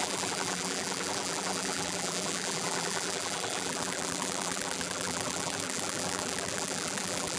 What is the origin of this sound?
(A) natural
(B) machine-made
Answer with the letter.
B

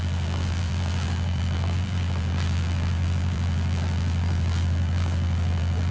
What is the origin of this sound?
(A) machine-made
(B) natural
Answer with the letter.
A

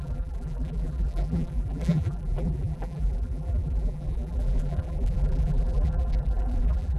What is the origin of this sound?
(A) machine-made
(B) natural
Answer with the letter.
A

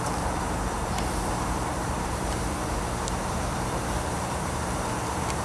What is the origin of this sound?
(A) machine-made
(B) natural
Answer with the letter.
A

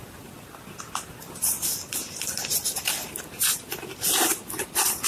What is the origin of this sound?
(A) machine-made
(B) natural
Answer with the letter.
A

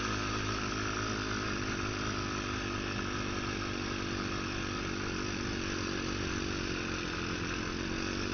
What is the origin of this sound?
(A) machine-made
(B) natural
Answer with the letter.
B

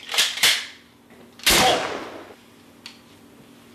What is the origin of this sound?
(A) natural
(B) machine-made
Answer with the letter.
A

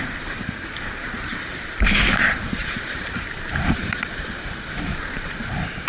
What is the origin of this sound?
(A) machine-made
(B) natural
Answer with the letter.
A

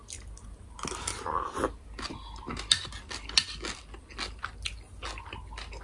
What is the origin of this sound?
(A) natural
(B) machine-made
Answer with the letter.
A